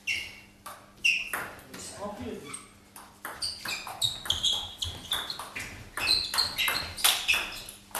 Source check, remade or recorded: recorded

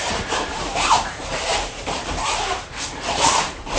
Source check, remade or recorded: remade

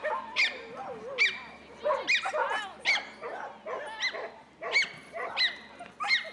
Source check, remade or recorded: recorded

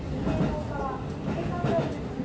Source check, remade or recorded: recorded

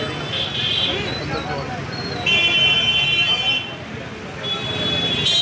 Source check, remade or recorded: recorded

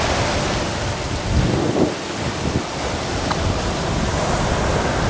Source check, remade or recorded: recorded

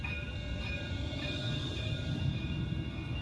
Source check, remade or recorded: recorded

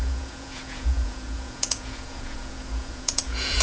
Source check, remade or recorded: remade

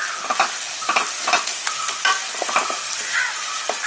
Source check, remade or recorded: recorded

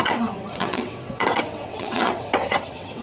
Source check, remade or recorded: remade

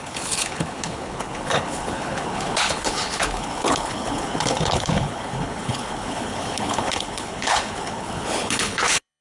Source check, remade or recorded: remade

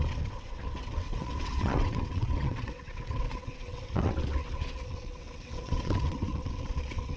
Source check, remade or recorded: remade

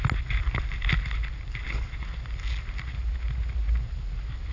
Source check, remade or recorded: recorded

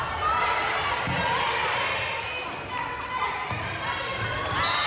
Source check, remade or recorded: recorded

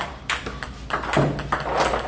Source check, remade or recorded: recorded